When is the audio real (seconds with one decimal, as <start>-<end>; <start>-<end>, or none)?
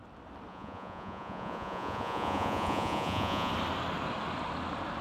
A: 0.0-0.5; 3.5-5.0